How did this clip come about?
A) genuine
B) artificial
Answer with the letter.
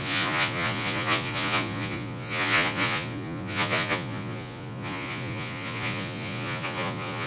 B